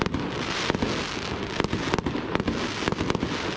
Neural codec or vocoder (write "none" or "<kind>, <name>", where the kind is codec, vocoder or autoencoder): none